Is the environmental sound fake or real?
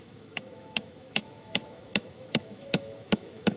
fake